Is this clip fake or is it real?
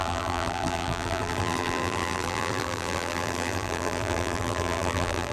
fake